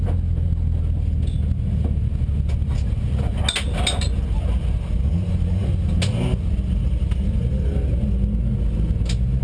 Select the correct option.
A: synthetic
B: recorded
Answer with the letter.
B